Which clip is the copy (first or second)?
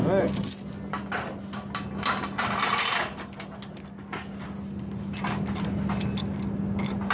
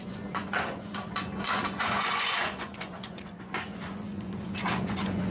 second